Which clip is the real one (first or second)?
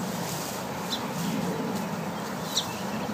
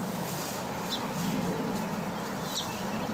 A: second